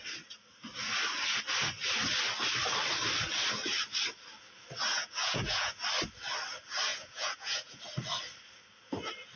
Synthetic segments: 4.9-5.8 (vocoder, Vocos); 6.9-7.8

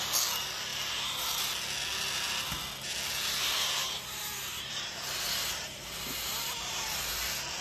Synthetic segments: 3.8-7.1 (vocoder, BigVGAN v2)